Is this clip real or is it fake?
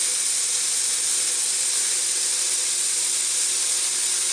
fake